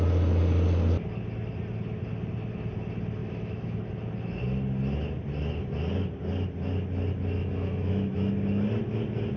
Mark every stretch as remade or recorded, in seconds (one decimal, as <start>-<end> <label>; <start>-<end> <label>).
0.0-3.2 recorded; 3.2-3.8 remade; 3.8-7.4 recorded; 7.4-8.3 remade; 8.3-9.4 recorded